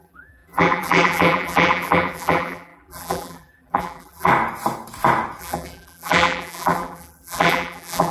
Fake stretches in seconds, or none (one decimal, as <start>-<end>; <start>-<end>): 0.0-4.3; 5.4-8.1